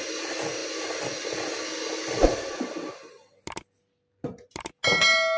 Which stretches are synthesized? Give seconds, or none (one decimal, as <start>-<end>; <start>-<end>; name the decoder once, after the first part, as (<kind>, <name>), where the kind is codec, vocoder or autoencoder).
none